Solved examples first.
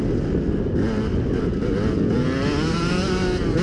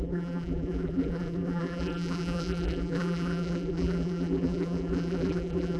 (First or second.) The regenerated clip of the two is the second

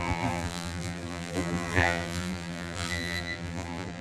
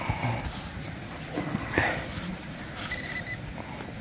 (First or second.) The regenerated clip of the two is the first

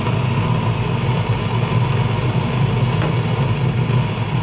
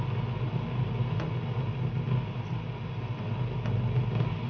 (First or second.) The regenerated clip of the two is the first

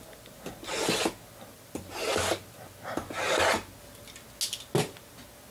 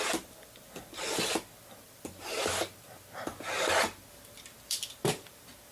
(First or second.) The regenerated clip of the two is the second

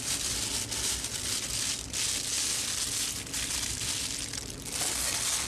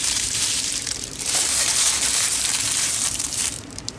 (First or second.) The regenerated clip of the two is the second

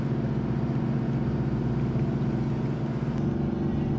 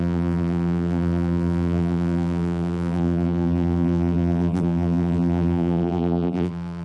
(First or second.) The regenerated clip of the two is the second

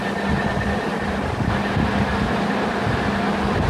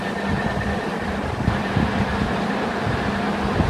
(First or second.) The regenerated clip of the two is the second